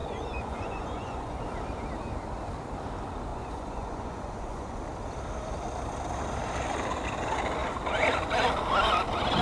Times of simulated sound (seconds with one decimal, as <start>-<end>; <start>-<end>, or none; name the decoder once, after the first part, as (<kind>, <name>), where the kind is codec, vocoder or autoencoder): 0.0-1.4 (vocoder, Vocos); 3.3-4.8